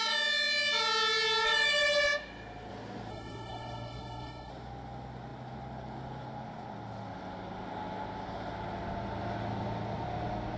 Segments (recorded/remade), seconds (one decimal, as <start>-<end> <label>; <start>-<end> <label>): 0.0-3.1 recorded; 3.1-4.5 remade; 4.5-10.6 recorded